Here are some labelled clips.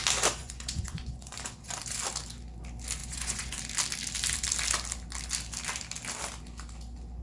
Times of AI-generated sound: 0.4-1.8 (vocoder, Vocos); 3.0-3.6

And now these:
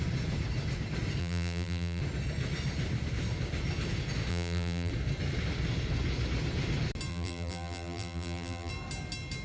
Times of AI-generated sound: 1.2-2.0 (vocoder, BigVGAN v2); 4.3-4.9; 7.1-8.7

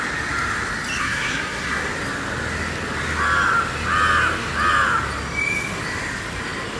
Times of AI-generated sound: 1.0-1.9 (codec, SNAC)

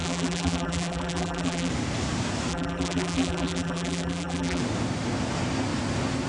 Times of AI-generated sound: 0.0-1.7 (vocoder, BigVGAN v2); 2.5-4.6